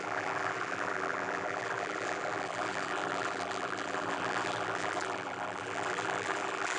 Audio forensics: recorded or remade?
remade